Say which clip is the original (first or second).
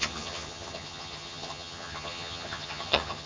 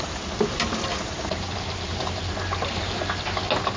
second